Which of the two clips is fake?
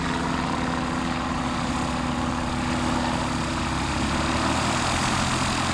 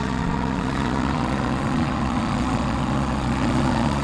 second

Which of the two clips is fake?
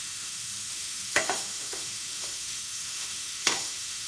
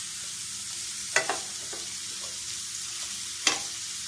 first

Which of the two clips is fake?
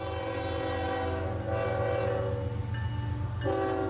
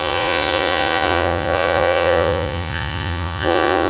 second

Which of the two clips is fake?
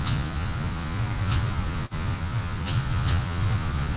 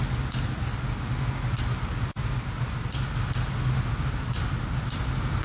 first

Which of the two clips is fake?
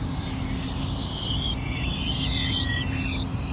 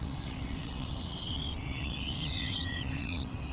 second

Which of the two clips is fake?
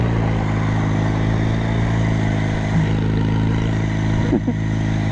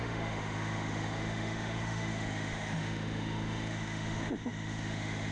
second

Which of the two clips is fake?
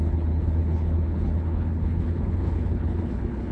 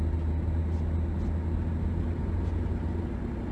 first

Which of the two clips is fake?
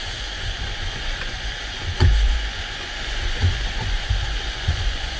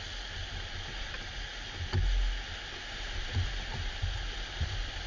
first